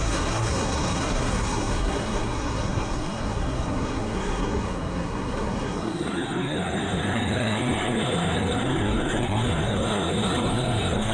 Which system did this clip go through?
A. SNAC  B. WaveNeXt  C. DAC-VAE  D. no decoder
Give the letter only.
A